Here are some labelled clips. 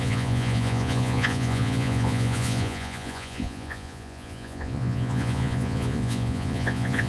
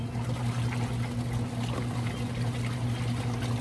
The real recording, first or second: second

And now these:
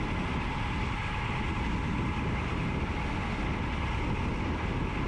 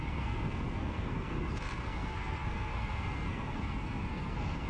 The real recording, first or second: first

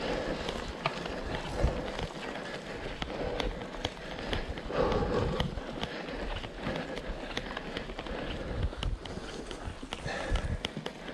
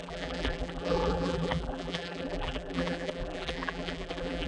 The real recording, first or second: first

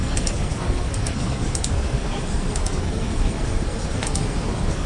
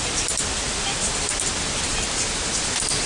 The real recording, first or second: second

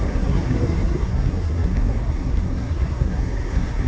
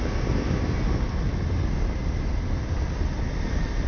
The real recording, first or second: second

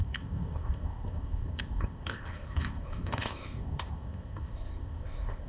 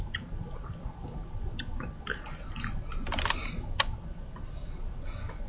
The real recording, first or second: second